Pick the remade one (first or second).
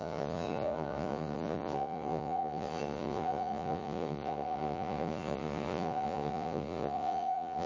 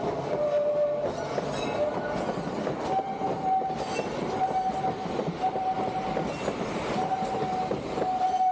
first